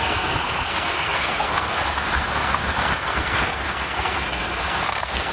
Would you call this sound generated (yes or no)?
yes